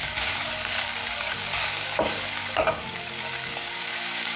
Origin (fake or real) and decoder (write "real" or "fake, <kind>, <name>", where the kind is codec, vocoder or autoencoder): fake, codec, DAC